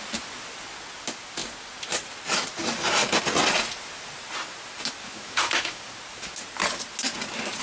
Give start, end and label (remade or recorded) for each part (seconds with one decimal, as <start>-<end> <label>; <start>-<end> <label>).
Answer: 0.0-5.0 recorded; 5.0-5.8 remade; 5.8-7.6 recorded